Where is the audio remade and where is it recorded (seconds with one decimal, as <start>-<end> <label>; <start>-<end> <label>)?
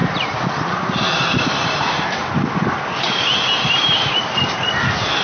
0.0-2.2 remade; 2.2-3.6 recorded; 3.6-5.2 remade